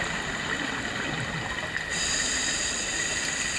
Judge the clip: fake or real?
real